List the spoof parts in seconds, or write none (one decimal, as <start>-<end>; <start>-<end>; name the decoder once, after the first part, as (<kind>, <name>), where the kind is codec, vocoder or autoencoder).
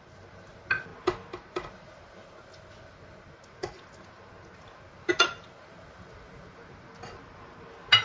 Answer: none